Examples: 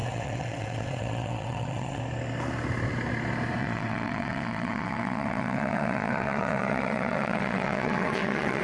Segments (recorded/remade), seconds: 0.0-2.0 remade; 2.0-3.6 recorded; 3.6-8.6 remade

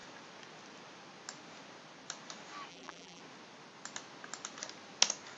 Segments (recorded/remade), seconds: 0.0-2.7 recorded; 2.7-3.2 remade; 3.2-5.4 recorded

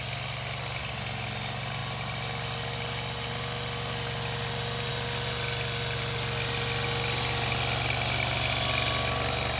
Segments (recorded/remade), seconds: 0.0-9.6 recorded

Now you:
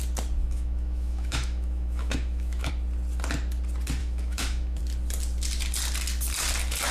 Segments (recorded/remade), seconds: 0.0-0.4 recorded; 0.4-2.7 remade; 2.7-4.0 recorded; 4.0-4.8 remade; 4.8-6.9 recorded

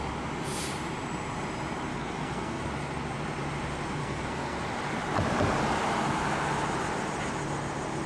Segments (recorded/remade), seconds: 0.0-1.9 recorded; 1.9-2.6 remade; 2.6-4.0 recorded; 4.0-4.6 remade; 4.6-8.1 recorded

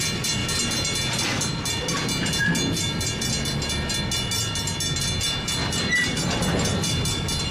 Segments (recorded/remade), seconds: 0.0-5.6 recorded; 5.6-6.9 remade; 6.9-7.5 recorded